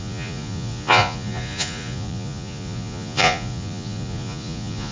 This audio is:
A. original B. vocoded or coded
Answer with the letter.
B